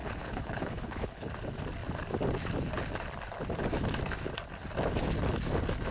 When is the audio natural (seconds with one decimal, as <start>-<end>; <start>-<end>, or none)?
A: 1.3-5.9